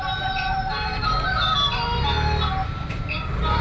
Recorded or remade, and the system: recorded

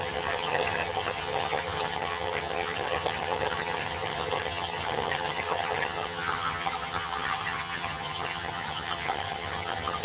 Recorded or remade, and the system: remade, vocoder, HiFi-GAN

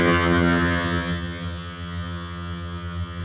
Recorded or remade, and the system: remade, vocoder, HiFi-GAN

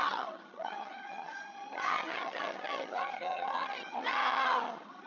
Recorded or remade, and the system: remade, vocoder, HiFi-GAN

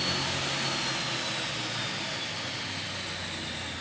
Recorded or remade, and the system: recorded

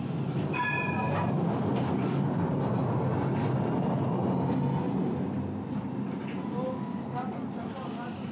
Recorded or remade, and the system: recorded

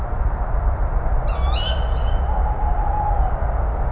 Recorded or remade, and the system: recorded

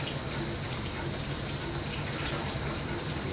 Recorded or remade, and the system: recorded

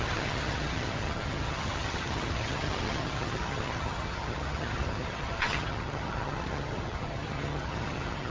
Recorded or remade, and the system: remade, vocoder, HiFi-GAN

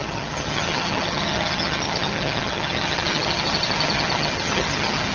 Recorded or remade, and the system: remade, vocoder, HiFi-GAN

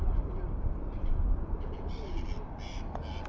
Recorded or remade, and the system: recorded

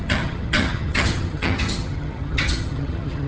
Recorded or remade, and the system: remade, vocoder, HiFi-GAN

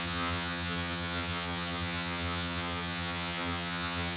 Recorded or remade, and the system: remade, vocoder, HiFi-GAN